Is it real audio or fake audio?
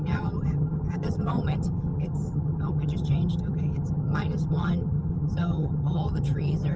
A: fake